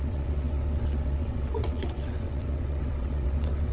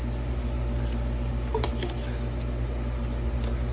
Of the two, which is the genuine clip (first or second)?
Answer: second